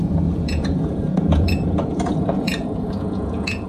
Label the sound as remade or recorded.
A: remade